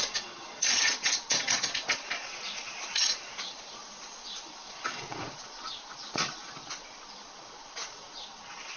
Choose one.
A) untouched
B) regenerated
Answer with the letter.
B